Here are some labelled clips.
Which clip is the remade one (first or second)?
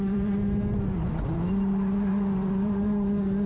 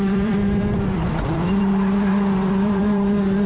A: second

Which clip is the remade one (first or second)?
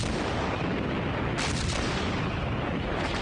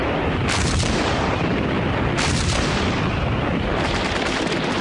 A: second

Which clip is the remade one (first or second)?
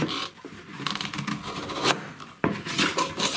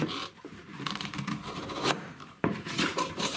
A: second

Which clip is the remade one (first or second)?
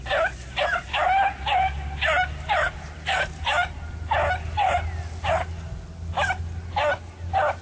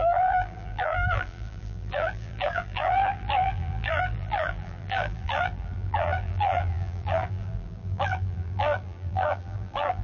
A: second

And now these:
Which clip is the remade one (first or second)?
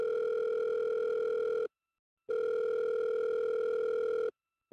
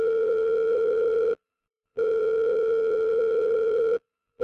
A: second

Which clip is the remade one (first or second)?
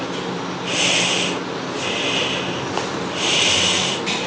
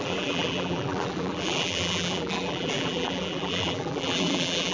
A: second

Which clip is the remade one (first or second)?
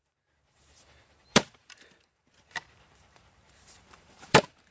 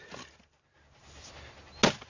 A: first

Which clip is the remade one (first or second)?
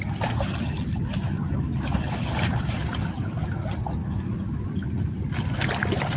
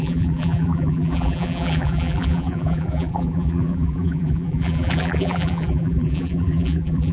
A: second